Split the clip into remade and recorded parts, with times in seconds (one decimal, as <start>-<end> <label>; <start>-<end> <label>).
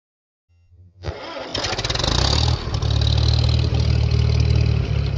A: 0.0-0.5 recorded; 0.5-1.1 remade; 1.1-5.2 recorded